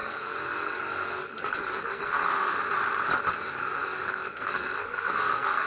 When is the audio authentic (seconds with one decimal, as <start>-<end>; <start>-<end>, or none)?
2.6-3.5